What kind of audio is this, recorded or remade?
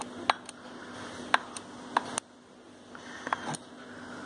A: recorded